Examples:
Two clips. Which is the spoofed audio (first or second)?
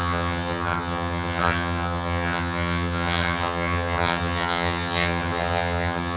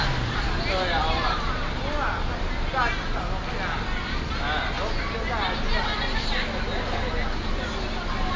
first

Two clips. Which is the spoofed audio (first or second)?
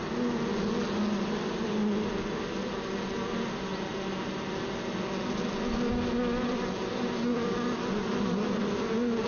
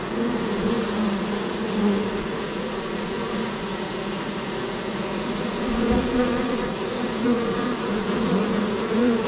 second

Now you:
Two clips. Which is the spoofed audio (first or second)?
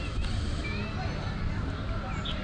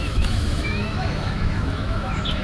second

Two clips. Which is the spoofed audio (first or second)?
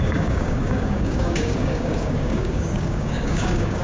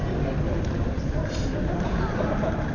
first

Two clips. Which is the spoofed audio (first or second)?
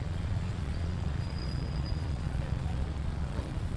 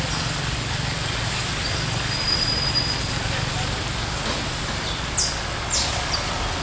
first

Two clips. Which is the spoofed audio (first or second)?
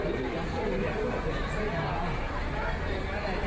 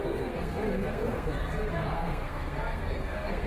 second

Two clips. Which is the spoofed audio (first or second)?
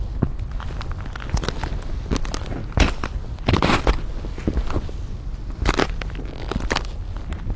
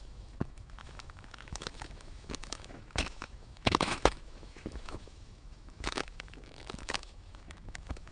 second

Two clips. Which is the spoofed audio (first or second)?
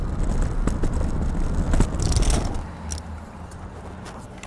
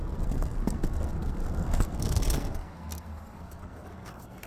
second